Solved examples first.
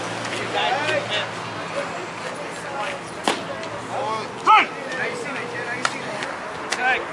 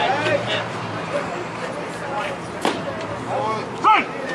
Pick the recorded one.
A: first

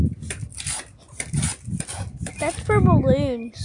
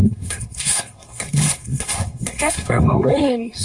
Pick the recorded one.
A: first